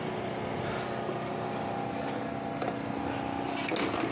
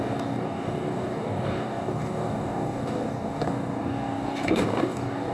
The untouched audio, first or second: first